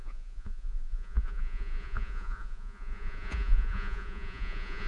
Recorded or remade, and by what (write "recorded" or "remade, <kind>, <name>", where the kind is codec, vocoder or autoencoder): remade, vocoder, Vocos